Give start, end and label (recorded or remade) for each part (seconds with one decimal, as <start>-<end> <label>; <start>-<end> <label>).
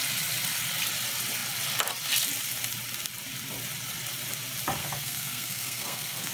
0.0-4.8 recorded; 4.8-6.3 remade